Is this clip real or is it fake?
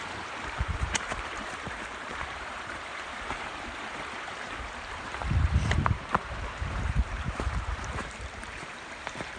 fake